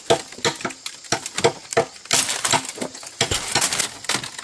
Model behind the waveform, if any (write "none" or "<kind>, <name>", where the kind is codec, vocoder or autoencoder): none